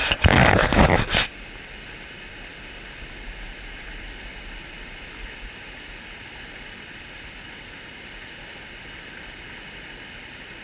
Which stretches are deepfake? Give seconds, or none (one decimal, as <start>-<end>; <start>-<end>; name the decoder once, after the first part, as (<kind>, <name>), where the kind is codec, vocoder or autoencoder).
none